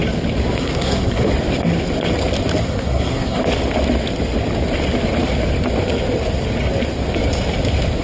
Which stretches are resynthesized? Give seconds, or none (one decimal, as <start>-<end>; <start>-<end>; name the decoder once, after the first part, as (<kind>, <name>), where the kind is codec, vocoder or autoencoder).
0.6-1.3 (codec, SNAC); 2.6-3.4